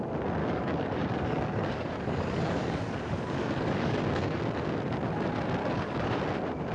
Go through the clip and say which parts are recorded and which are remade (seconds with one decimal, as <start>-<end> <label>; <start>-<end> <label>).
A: 0.0-0.4 recorded; 0.4-4.4 remade; 4.4-5.6 recorded; 5.6-6.2 remade; 6.2-6.7 recorded